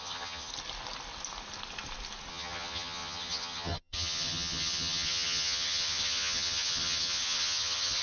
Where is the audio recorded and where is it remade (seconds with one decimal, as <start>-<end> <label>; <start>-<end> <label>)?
0.0-0.5 remade; 0.5-2.3 recorded; 2.3-8.0 remade